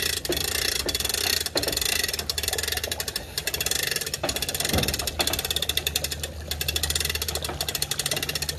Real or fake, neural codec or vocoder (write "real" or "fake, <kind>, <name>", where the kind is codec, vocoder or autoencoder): real